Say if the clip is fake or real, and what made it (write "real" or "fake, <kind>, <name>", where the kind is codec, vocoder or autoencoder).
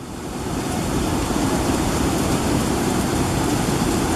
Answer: fake, vocoder, BigVGAN v2